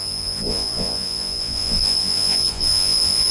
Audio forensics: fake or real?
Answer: fake